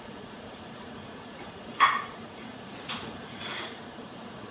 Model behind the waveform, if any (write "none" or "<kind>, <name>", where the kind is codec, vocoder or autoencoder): vocoder, Vocos